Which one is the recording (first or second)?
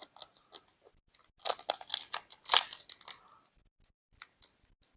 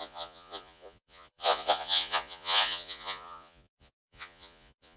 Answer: first